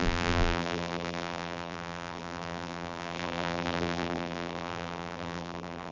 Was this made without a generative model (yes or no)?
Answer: no